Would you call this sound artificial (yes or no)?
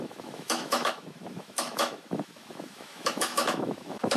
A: yes